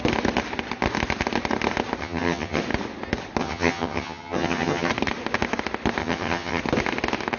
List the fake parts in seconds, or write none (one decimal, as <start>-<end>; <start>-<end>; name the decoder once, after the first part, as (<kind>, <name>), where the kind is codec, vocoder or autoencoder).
2.0-2.6 (vocoder, HiFi-GAN); 3.4-4.9; 6.0-6.6